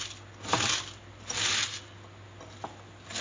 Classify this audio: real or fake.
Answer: real